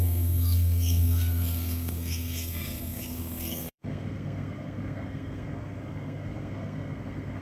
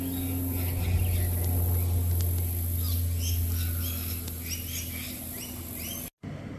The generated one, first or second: first